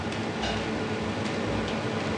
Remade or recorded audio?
recorded